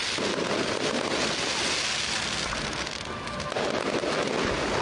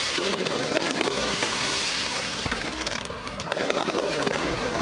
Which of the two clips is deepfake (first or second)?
second